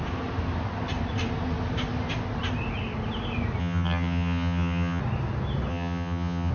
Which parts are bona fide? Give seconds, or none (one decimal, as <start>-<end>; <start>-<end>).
0.0-3.6; 5.0-5.7